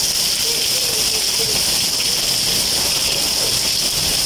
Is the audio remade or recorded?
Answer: recorded